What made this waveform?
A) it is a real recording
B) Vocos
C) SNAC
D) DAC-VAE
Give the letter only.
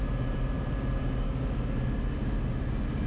A